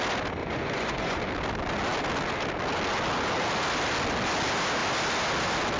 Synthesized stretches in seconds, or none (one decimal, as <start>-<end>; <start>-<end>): 0.4-1.2